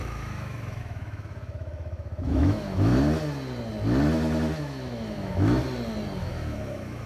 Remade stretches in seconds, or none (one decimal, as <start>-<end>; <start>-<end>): 0.0-2.9; 4.6-5.6; 6.2-7.1